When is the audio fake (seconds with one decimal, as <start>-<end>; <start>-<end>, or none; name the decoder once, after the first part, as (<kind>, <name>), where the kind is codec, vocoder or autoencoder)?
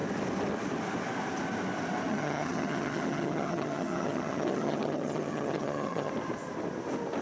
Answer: 2.1-6.1 (vocoder, HiFi-GAN)